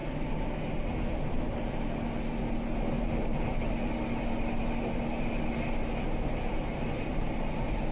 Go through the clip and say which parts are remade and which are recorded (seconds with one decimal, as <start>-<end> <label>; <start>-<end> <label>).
0.0-7.9 recorded